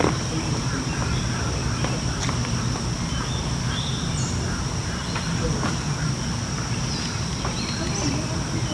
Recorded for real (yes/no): yes